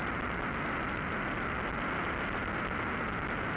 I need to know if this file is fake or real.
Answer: real